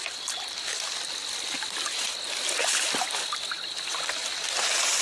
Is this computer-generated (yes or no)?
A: no